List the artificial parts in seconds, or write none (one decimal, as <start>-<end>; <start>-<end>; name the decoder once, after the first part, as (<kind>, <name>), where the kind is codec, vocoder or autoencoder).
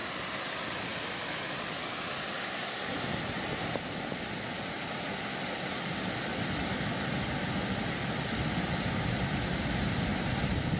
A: none